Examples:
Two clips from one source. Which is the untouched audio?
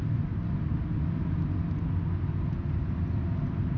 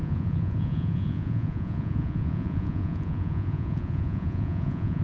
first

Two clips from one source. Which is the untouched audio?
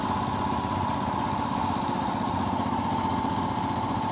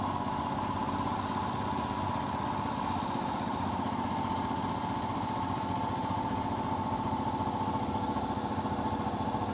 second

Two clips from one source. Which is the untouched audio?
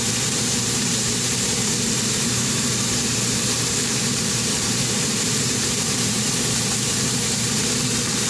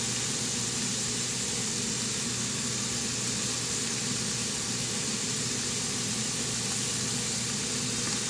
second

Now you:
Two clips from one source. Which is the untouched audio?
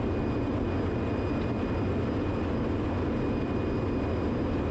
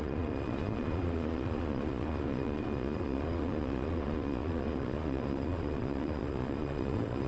first